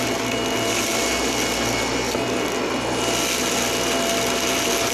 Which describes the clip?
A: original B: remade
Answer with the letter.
A